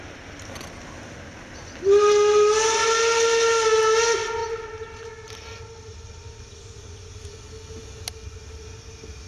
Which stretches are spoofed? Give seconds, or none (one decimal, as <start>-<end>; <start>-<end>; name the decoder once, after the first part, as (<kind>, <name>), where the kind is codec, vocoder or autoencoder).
none